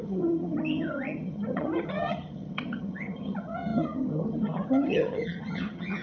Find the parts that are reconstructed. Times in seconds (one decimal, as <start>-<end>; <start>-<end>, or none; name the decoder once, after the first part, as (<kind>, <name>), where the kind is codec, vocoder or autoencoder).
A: 0.0-6.0 (vocoder, HiFi-GAN)